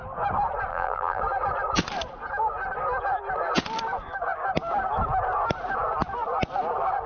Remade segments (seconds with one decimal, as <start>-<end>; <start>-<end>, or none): 0.7-1.2